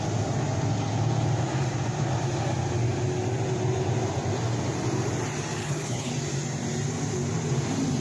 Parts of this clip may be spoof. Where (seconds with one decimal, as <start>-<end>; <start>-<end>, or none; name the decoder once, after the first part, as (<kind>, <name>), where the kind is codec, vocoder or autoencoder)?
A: 5.6-6.1 (codec, HILCodec)